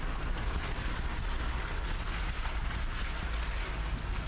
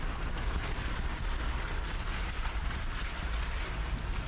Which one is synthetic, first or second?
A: second